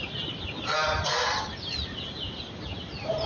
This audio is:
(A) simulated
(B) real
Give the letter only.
B